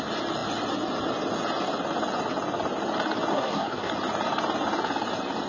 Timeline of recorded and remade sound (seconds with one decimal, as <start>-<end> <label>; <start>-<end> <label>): 0.0-3.3 recorded; 3.3-3.9 remade; 3.9-5.5 recorded